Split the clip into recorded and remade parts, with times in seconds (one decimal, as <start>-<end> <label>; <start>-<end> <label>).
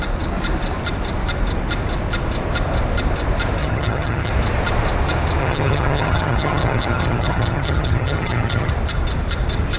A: 0.0-3.6 recorded; 3.6-4.3 remade; 4.3-5.4 recorded; 5.4-8.7 remade; 8.7-9.8 recorded